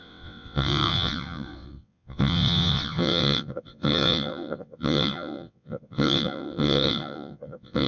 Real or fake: fake